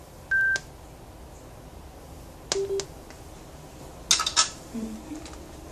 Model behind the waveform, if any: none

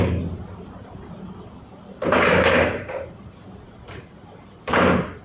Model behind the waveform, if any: none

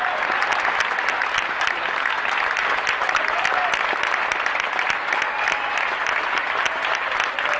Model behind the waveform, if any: none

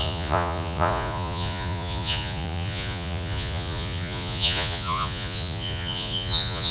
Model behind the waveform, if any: vocoder, Vocos